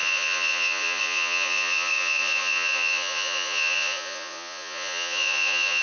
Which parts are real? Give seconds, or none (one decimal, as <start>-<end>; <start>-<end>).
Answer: none